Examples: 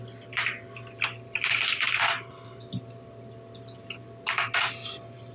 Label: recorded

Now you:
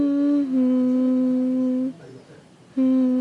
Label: recorded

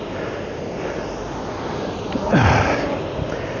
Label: recorded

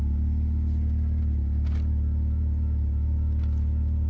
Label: recorded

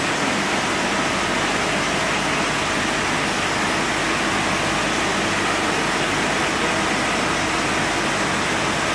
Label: recorded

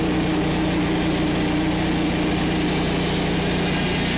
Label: recorded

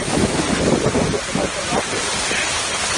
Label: recorded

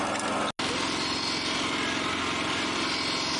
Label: recorded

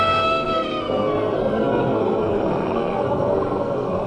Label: remade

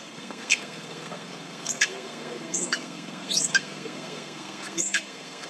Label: remade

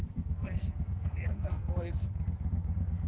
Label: remade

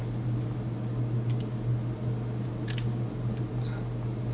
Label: recorded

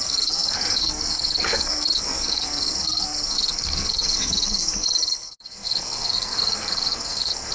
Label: remade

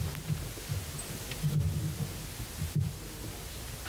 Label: recorded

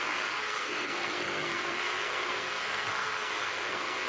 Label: remade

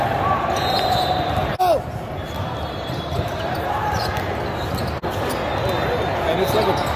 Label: recorded